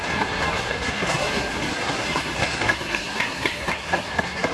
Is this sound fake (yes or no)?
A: yes